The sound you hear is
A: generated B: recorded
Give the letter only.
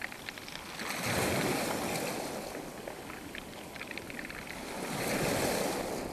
B